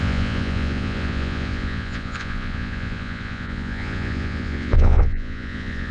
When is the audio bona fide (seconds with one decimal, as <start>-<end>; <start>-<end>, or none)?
none